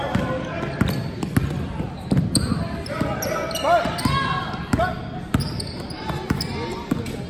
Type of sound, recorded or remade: recorded